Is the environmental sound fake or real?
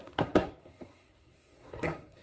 fake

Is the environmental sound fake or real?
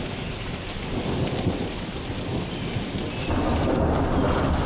real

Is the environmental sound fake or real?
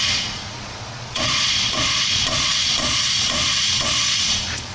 fake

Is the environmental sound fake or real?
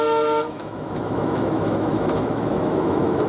fake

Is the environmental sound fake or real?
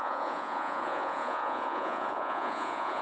fake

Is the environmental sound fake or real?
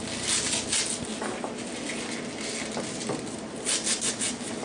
real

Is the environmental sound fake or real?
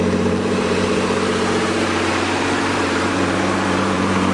fake